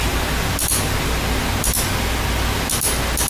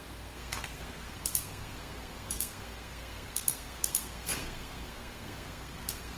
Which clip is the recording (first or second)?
first